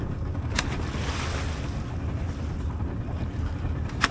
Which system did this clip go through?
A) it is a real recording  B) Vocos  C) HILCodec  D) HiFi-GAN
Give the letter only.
A